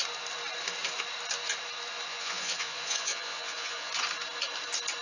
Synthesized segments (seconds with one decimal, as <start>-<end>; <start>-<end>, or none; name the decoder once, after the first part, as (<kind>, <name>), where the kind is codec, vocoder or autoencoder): 2.1-3.9 (vocoder, Vocos)